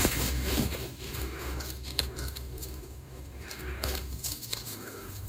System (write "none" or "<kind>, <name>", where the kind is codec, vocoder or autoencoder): codec, DAC